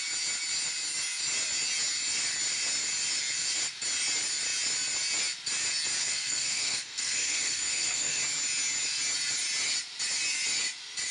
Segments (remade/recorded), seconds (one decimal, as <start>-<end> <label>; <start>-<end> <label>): 0.0-6.0 recorded; 6.0-8.2 remade; 8.2-11.1 recorded